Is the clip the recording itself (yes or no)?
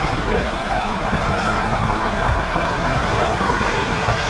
no